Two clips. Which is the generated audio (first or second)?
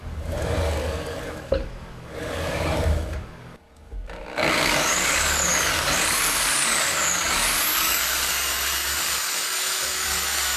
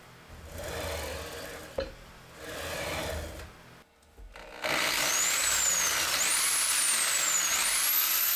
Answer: first